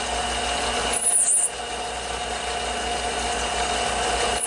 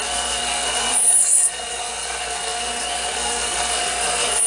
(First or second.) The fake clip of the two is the second